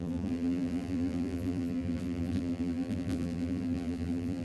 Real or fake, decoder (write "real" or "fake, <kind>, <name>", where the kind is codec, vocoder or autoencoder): fake, vocoder, BigVGAN v2